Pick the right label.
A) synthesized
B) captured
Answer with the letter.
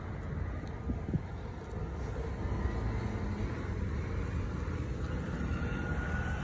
B